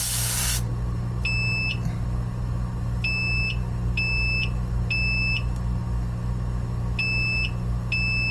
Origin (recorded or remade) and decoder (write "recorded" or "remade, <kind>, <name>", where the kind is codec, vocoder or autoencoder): recorded